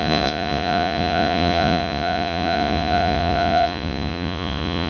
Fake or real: fake